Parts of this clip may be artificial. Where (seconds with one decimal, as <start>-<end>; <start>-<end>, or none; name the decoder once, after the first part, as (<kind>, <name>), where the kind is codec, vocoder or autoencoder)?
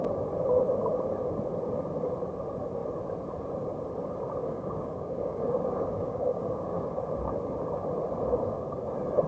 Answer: 4.4-6.9 (codec, DAC)